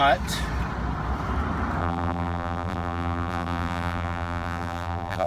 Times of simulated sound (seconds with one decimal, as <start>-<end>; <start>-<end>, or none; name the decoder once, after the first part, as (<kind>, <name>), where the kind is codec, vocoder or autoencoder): 1.8-5.3 (vocoder, BigVGAN v2)